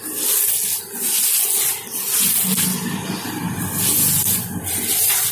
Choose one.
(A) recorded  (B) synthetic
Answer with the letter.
A